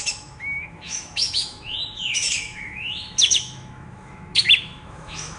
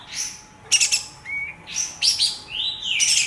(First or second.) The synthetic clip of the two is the first